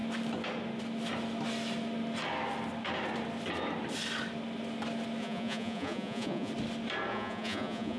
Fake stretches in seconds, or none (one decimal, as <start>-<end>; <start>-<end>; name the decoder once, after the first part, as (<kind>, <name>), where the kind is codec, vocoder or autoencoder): 5.2-6.5 (vocoder, Vocos); 7.1-8.0